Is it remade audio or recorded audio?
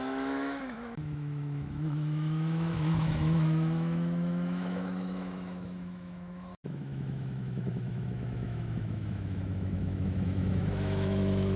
remade